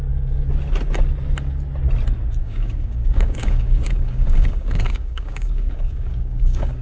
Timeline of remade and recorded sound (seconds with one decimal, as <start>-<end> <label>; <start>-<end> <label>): 0.0-2.4 recorded; 2.4-6.8 remade